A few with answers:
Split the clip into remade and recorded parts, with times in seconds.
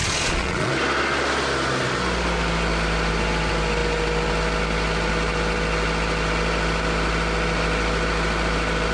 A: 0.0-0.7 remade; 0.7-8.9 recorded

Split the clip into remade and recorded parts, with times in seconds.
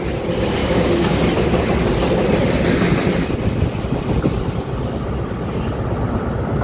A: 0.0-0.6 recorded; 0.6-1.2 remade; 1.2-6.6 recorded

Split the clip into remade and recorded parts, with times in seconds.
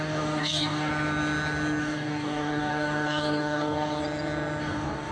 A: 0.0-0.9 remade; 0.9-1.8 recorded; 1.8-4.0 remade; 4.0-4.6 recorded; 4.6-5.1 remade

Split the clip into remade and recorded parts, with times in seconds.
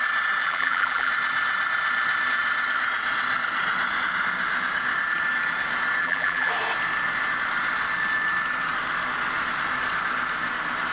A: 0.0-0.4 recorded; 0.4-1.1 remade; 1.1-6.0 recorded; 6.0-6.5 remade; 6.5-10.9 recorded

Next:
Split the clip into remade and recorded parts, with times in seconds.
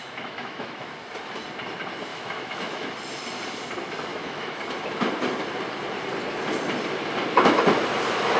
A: 0.0-0.9 remade; 0.9-2.1 recorded; 2.1-2.9 remade; 2.9-4.1 recorded; 4.1-4.6 remade; 4.6-8.4 recorded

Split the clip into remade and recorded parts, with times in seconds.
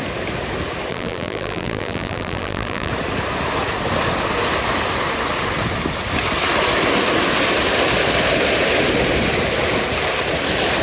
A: 0.0-0.9 recorded; 0.9-2.9 remade; 2.9-10.8 recorded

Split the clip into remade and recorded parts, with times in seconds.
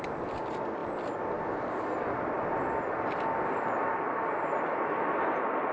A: 0.0-5.7 recorded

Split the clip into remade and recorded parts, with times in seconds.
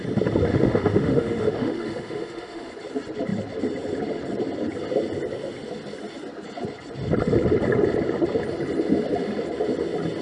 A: 0.0-0.5 recorded; 0.5-2.7 remade; 2.7-10.2 recorded